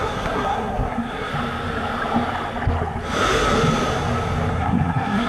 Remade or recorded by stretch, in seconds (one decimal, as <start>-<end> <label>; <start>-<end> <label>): 0.0-1.3 remade; 1.3-4.5 recorded; 4.5-5.3 remade